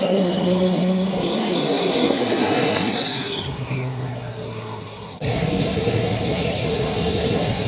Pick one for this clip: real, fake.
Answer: fake